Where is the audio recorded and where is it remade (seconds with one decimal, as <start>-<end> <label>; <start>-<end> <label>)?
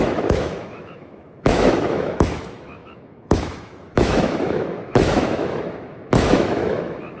0.0-7.2 remade